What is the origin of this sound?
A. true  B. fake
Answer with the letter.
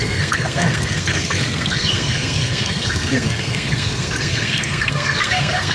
B